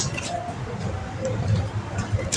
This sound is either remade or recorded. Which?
recorded